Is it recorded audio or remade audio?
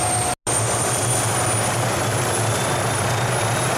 recorded